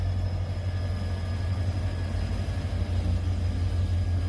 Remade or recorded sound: recorded